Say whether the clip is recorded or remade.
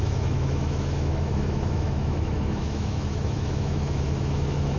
remade